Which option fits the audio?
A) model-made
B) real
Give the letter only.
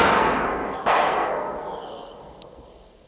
A